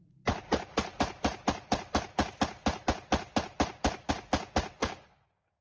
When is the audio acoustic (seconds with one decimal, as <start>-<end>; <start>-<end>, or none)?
0.0-4.8